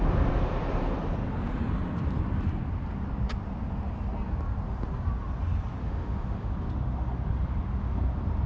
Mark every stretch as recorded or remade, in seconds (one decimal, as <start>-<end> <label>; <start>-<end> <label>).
0.0-5.8 recorded; 5.8-6.5 remade; 6.5-8.5 recorded